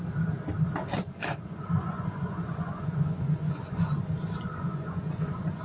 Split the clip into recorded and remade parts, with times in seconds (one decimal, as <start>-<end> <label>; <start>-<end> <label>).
0.0-0.8 recorded; 0.8-4.0 remade; 4.0-4.5 recorded; 4.5-5.6 remade